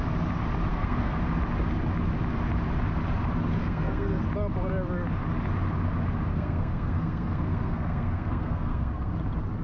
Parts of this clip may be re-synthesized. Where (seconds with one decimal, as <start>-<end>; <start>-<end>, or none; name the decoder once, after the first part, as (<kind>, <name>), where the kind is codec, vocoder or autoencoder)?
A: 0.7-1.2 (codec, SNAC); 3.6-4.2; 6.3-9.1